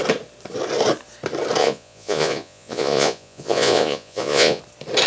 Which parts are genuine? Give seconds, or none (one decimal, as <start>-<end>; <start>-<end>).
0.0-1.6; 4.6-5.1